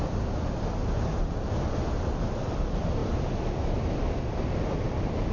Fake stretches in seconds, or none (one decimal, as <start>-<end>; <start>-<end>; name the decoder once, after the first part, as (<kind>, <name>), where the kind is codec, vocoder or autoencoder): 1.7-3.0 (vocoder, BigVGAN v2); 3.8-5.3